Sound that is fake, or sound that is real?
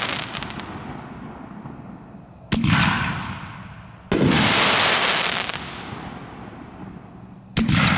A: real